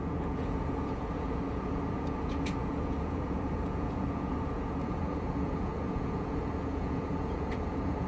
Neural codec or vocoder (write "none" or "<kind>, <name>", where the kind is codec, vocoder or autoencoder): vocoder, Vocos